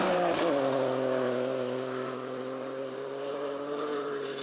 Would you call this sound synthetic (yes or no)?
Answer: yes